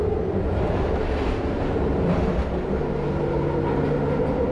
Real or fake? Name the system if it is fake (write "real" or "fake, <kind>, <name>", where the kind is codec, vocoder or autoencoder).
real